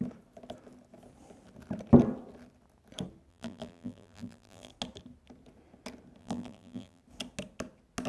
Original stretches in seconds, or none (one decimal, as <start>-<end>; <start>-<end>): 0.0-3.3; 4.7-6.2; 7.0-8.1